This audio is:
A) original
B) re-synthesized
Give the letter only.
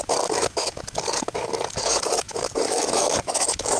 B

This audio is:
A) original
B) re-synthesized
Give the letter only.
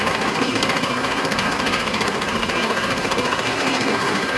B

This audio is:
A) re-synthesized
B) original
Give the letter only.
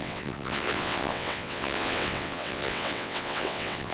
A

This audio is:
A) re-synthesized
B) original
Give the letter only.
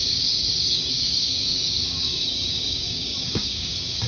A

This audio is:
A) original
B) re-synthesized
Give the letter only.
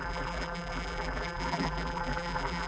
B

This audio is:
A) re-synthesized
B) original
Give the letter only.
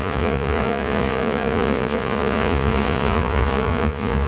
A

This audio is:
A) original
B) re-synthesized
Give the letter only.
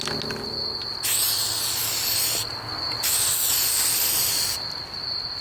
A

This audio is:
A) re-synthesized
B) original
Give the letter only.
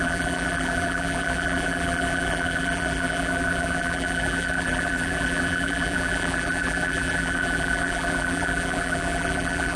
A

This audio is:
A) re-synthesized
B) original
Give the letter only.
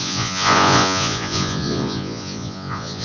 A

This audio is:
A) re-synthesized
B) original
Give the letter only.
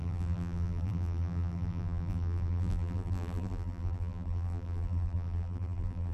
A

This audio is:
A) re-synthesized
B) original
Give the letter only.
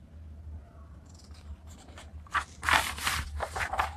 A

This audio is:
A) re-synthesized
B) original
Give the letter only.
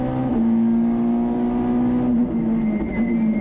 B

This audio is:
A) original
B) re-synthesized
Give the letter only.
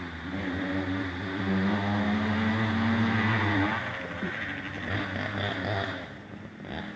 A